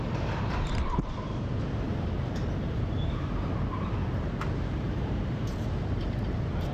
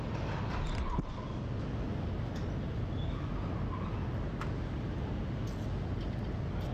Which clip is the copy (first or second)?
first